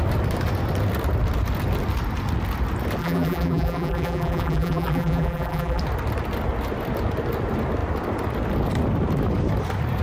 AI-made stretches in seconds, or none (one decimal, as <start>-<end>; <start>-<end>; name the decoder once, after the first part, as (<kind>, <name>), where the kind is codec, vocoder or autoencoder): 3.0-5.8 (vocoder, BigVGAN v2)